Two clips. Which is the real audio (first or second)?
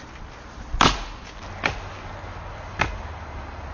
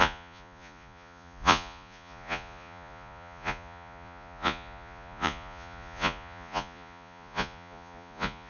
first